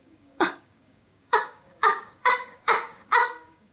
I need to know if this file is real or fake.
fake